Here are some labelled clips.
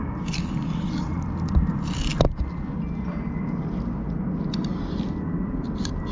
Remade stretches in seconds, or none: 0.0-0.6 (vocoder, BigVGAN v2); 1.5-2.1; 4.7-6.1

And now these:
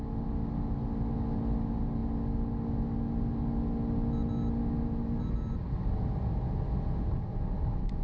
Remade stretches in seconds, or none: none

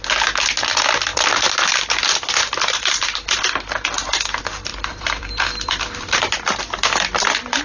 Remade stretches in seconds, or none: 1.1-1.9 (vocoder, BigVGAN v2); 4.7-6.6

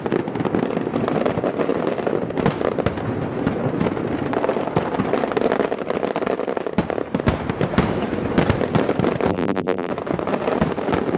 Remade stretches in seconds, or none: 9.3-9.9 (vocoder, BigVGAN v2)

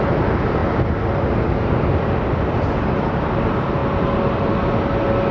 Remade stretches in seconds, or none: 0.0-3.8 (vocoder, BigVGAN v2)